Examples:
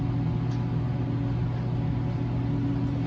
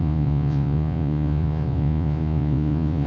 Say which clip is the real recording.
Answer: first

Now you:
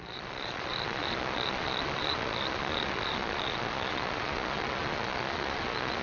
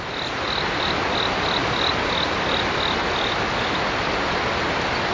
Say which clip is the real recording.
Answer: second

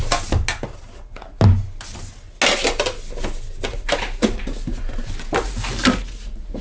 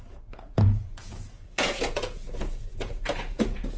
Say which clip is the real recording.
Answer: first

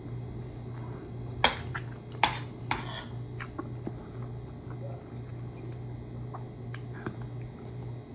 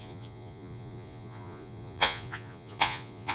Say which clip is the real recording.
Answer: first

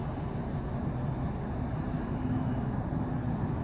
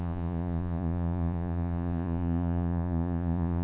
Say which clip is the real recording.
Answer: first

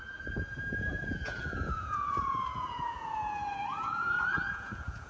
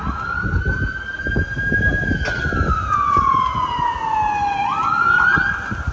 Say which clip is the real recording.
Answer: second